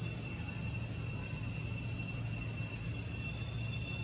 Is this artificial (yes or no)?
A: no